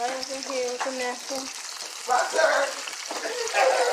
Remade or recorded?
recorded